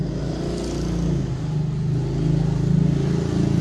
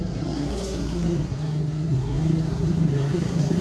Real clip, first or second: first